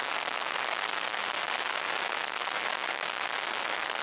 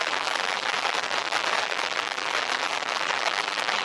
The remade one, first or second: second